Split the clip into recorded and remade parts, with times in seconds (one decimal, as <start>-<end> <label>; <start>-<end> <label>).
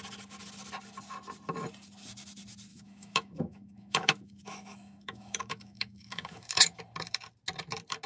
0.0-2.7 recorded; 2.7-6.8 remade; 6.8-8.1 recorded